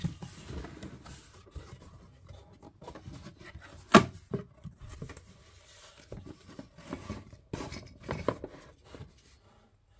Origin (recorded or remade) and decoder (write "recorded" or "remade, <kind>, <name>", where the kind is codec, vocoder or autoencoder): recorded